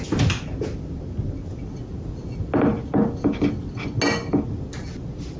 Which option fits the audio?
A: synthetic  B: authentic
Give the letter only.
B